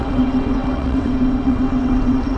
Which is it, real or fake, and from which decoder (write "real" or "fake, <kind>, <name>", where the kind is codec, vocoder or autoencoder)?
fake, vocoder, WaveNeXt